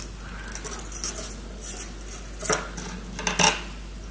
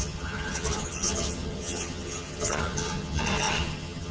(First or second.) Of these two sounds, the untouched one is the first